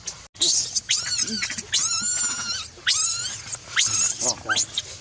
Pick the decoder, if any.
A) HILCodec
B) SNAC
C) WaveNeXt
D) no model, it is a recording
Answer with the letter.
D